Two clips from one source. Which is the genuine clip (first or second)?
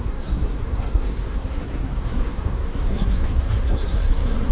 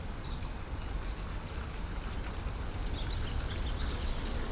second